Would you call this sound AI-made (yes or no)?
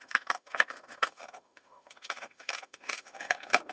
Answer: yes